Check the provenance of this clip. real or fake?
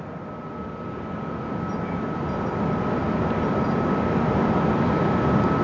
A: real